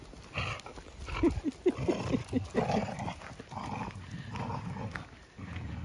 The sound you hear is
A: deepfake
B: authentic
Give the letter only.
B